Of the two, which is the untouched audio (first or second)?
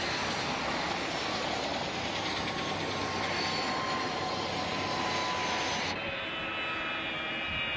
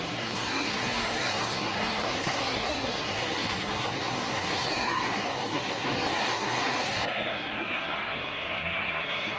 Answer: first